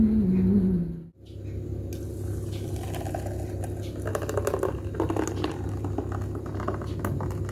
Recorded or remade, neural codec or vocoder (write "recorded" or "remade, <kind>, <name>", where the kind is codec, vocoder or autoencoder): recorded